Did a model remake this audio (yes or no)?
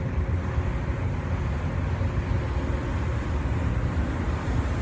no